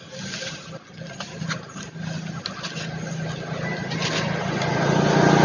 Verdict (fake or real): real